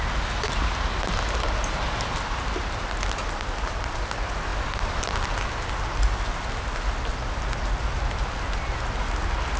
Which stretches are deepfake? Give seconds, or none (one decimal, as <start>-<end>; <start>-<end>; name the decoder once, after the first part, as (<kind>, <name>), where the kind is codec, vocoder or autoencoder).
none